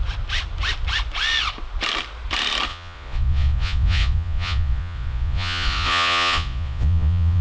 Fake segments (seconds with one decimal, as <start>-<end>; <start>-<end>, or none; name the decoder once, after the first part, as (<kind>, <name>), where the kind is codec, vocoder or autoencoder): 2.7-7.4 (vocoder, Vocos)

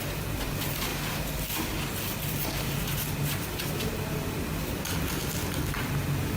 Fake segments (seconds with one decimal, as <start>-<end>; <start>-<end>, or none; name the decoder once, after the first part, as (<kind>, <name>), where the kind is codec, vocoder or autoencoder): none

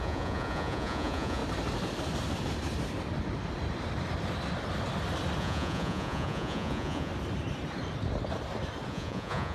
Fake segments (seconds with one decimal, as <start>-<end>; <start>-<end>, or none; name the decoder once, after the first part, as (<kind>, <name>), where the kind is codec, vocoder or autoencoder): 0.0-1.4 (vocoder, Vocos); 5.4-7.1; 8.9-9.5

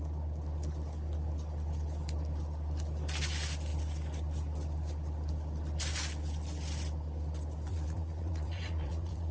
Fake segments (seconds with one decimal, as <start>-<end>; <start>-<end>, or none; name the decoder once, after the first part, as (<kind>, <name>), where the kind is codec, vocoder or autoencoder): 7.7-9.3 (vocoder, Vocos)

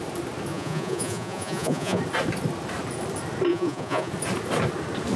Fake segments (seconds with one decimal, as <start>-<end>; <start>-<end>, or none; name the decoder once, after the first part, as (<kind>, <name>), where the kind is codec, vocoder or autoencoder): 0.5-2.0 (vocoder, Vocos); 3.5-4.1

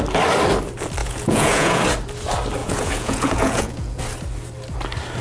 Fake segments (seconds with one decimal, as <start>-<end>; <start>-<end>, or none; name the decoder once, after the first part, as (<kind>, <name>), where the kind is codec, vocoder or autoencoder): 1.0-1.8 (vocoder, Vocos); 2.6-4.0

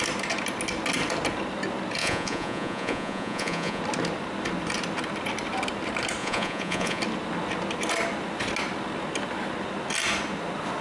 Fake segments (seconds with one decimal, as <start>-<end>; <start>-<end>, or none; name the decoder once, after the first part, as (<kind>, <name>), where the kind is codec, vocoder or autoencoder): 2.0-3.8 (vocoder, Vocos); 6.2-7.0

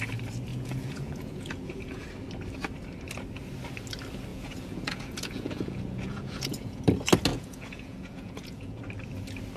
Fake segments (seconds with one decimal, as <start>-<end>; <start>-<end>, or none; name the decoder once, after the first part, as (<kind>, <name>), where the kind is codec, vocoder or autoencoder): 0.5-2.1 (vocoder, Vocos); 4.3-6.8; 7.3-8.8